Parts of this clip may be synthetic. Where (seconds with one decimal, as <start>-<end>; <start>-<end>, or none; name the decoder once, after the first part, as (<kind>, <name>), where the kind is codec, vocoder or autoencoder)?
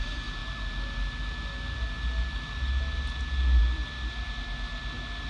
none